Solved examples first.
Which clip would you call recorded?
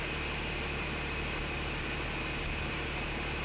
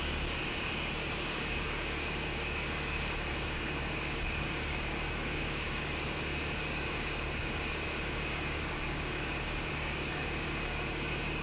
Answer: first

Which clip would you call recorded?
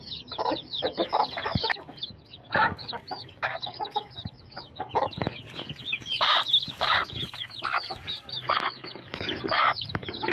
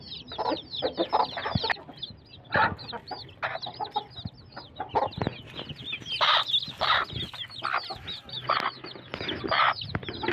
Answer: second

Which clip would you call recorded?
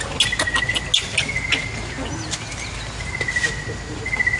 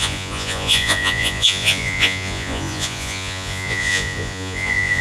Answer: first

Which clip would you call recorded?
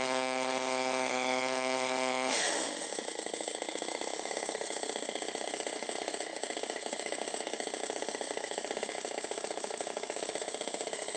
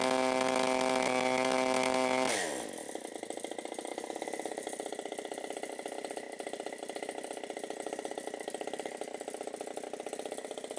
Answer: second